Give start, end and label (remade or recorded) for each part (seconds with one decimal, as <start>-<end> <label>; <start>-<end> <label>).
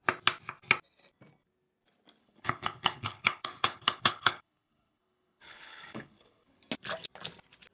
0.0-2.2 recorded; 2.2-6.6 remade; 6.6-7.7 recorded